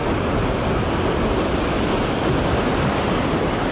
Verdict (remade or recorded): recorded